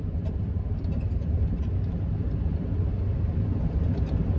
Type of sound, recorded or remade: remade